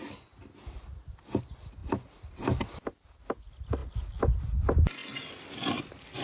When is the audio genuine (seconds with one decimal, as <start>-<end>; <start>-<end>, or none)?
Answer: 0.0-6.2